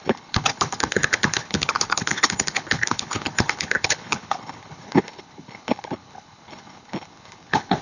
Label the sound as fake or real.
fake